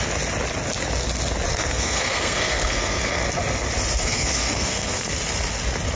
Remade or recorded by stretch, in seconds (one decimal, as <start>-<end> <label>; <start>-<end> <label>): 0.0-1.5 recorded; 1.5-3.1 remade; 3.1-4.0 recorded; 4.0-5.1 remade; 5.1-6.0 recorded